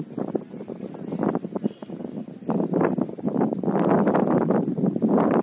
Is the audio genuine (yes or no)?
yes